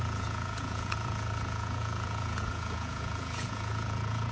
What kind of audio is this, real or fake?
fake